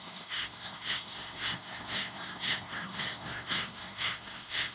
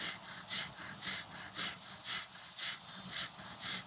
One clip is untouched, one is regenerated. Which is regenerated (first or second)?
first